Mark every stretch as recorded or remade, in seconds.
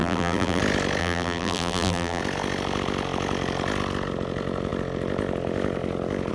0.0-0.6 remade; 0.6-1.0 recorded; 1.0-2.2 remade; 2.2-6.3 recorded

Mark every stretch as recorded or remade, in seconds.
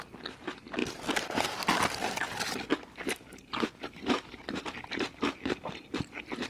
0.0-2.7 recorded; 2.7-6.5 remade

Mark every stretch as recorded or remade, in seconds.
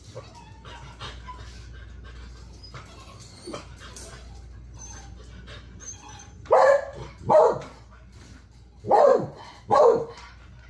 0.0-10.7 recorded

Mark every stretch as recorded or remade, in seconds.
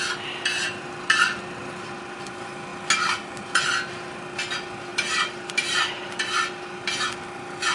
0.0-2.7 remade; 2.7-4.5 recorded; 4.5-7.7 remade